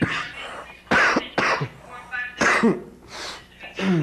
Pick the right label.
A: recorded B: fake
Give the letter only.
A